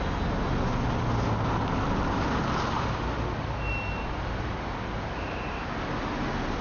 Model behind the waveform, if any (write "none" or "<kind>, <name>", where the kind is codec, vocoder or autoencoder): none